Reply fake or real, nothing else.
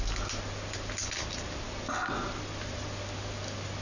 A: real